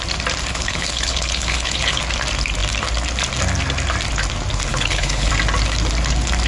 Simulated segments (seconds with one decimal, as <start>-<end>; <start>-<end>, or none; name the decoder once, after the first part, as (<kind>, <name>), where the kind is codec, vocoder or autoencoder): 0.5-2.0 (codec, HILCodec); 4.7-5.3